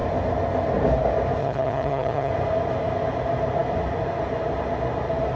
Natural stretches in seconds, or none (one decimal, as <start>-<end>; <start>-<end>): 0.0-1.4; 2.3-5.4